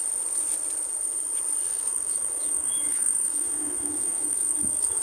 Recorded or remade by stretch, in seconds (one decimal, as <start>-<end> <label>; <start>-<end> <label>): 0.0-1.7 recorded; 1.7-5.0 remade